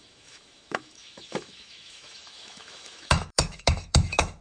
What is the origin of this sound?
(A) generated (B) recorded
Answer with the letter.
A